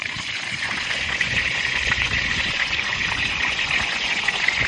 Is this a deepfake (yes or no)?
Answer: yes